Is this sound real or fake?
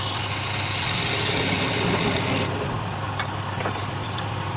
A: real